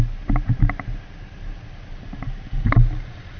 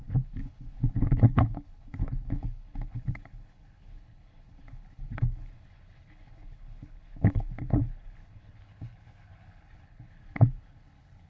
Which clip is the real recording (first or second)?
first